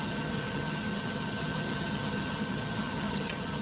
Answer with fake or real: fake